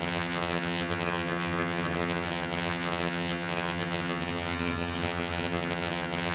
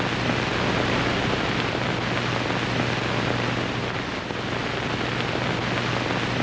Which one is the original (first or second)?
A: second